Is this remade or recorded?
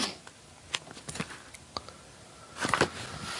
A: recorded